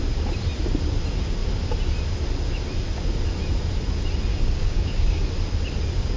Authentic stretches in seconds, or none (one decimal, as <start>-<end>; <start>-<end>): 0.0-4.3; 5.3-6.2